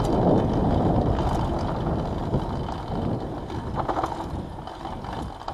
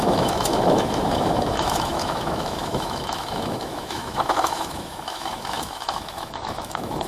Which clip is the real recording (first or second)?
first